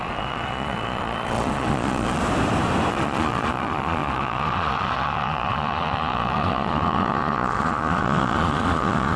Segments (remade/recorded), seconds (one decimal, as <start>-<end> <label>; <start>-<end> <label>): 0.0-2.2 remade; 2.2-2.9 recorded; 2.9-9.2 remade